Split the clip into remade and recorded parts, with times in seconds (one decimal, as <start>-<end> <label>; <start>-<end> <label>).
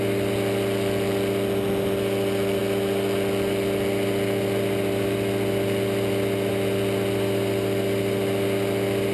0.0-9.1 recorded